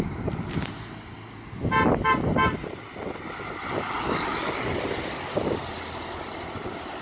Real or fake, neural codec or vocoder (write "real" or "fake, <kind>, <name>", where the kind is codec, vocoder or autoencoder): real